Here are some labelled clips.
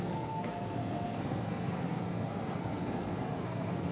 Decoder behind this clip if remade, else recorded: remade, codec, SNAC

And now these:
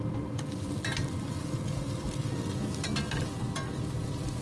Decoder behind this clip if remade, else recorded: recorded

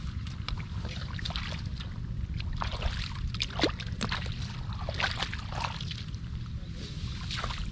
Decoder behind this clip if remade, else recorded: recorded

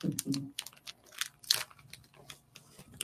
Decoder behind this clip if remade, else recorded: recorded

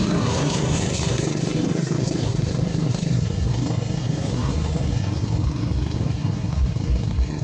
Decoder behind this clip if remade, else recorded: remade, codec, SNAC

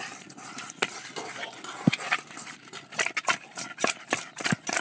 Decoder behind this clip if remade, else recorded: recorded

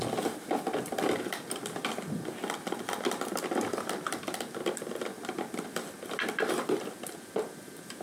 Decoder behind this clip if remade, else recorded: recorded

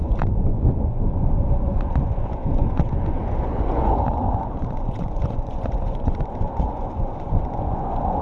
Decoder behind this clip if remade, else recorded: remade, vocoder, Vocos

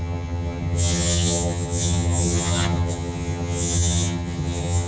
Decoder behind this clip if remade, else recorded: remade, vocoder, HiFi-GAN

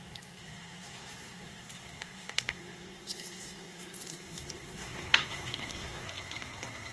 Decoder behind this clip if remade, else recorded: remade, codec, SNAC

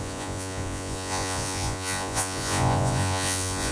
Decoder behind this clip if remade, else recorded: remade, vocoder, Vocos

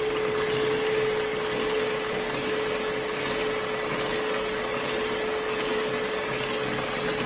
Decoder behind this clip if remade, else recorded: recorded